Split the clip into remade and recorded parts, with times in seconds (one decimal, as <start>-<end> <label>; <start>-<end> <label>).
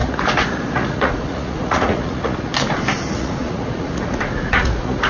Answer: 0.0-2.5 remade; 2.5-3.1 recorded; 3.1-5.1 remade